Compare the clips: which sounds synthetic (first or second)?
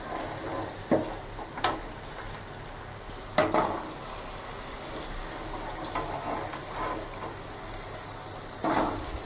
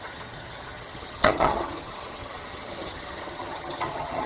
second